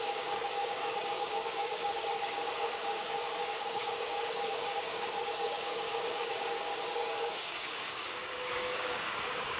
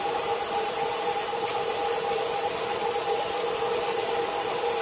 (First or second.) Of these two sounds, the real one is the second